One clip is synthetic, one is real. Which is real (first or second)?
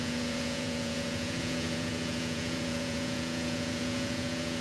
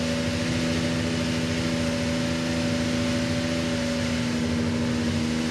second